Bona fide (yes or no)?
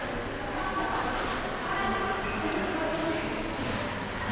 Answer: yes